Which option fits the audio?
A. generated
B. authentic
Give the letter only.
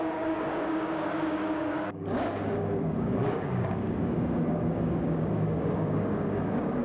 A